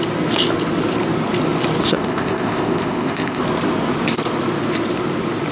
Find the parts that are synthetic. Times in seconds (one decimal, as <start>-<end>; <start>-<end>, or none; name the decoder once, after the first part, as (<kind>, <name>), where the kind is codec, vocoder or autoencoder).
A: 1.9-3.4 (codec, ZipCodec)